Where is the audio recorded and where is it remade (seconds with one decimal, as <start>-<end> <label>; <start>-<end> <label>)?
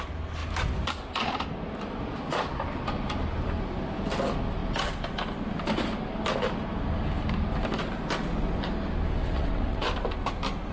0.0-9.2 recorded; 9.2-9.9 remade; 9.9-10.7 recorded